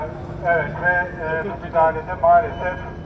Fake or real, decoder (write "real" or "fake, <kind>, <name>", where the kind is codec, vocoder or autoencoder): real